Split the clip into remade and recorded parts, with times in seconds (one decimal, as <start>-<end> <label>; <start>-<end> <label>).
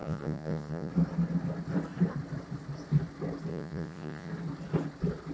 0.0-0.9 remade; 0.9-3.5 recorded; 3.5-4.3 remade; 4.3-5.3 recorded